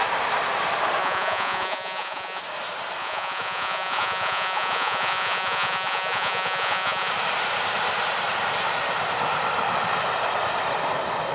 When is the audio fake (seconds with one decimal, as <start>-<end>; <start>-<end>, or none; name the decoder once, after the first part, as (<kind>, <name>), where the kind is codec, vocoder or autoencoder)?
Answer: 1.0-2.4 (vocoder, Vocos); 3.0-7.1